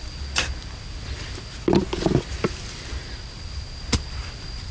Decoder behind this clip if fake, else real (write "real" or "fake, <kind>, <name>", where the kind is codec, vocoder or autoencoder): real